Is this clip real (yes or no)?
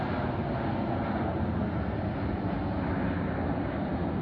yes